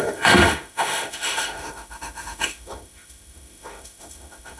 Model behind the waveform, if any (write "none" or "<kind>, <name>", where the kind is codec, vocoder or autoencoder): autoencoder, DAC-VAE